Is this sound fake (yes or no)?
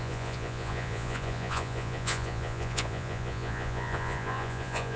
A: yes